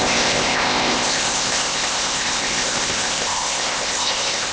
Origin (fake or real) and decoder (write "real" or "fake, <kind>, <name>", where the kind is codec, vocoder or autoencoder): fake, codec, ZipCodec